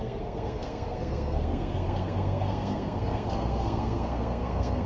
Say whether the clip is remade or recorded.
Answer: remade